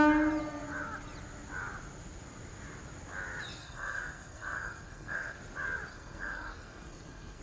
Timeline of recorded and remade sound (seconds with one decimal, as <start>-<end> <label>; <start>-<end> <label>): 0.0-3.6 recorded; 3.6-5.4 remade; 5.4-5.9 recorded; 5.9-7.4 remade